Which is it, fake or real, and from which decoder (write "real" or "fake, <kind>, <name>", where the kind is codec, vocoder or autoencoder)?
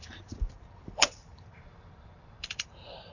fake, vocoder, BigVGAN v2